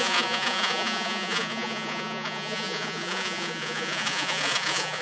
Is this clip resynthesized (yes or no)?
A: yes